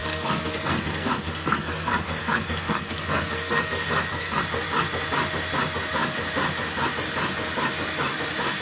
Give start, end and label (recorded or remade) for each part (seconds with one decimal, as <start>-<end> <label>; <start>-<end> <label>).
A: 0.0-4.4 remade; 4.4-8.6 recorded